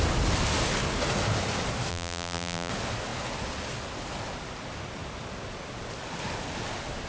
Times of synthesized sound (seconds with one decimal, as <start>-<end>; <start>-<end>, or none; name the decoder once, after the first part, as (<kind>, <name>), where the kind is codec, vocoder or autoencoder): 1.9-2.7 (vocoder, BigVGAN v2)